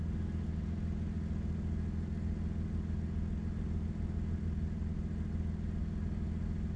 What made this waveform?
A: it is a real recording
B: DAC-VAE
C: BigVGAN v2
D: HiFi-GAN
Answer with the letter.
A